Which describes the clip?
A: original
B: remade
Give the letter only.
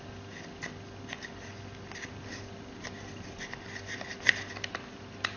A